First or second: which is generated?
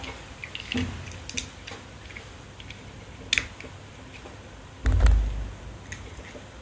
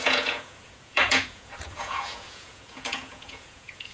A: second